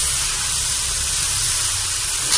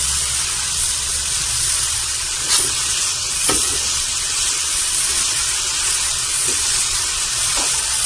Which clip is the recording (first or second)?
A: first